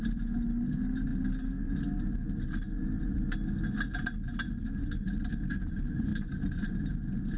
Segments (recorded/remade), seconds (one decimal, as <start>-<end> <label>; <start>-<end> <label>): 0.0-7.4 recorded